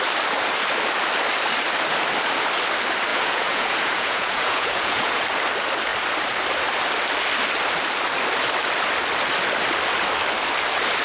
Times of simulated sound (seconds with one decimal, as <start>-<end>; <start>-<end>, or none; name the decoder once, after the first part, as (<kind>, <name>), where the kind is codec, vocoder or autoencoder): 3.1-5.2 (vocoder, Vocos)